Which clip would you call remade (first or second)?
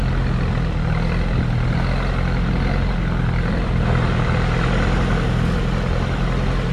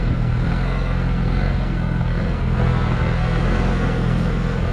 second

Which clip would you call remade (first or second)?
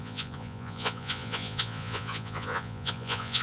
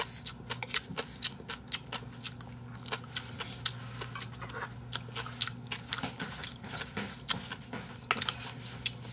first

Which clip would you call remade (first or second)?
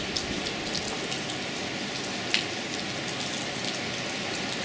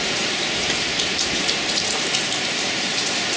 second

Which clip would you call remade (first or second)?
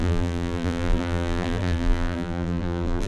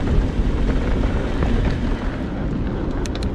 first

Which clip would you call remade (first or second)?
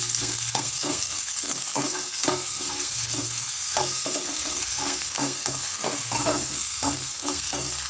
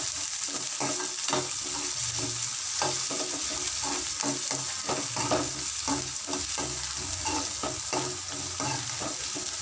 first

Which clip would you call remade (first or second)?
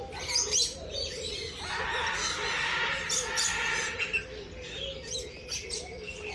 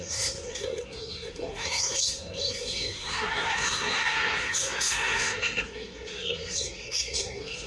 second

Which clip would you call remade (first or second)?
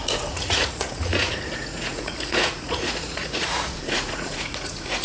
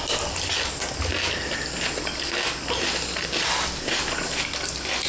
first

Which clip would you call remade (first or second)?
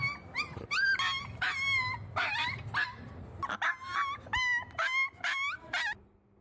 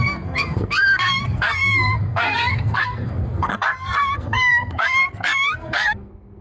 second